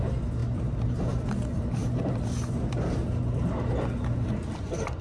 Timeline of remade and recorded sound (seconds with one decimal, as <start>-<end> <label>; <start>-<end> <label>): 0.0-5.0 recorded